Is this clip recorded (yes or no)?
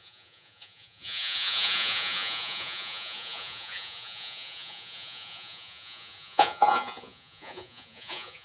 no